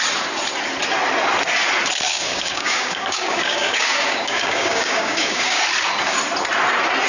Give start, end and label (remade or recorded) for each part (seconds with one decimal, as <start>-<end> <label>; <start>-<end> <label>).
0.0-2.1 recorded; 2.1-5.6 remade; 5.6-7.1 recorded